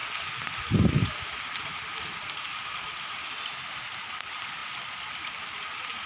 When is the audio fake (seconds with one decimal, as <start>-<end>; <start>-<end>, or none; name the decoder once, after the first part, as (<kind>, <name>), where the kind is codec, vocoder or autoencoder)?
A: none